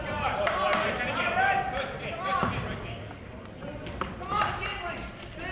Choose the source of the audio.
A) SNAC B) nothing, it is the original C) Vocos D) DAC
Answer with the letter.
B